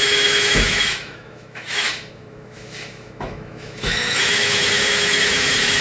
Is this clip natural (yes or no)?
no